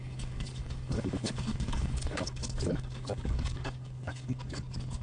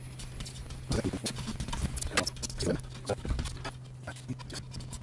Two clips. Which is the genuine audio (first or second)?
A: second